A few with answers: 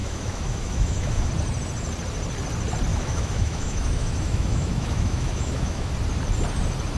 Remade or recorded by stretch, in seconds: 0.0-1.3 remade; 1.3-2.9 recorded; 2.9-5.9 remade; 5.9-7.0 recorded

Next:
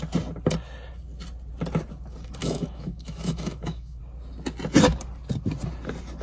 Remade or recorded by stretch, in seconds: 0.0-2.4 recorded; 2.4-4.0 remade; 4.0-6.2 recorded

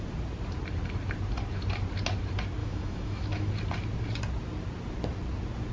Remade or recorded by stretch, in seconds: 0.0-2.6 recorded; 2.6-3.5 remade; 3.5-5.7 recorded